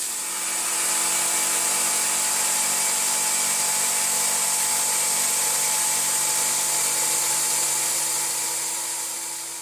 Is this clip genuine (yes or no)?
yes